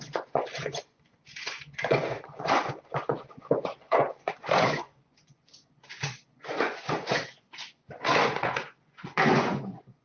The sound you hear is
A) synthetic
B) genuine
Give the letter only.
A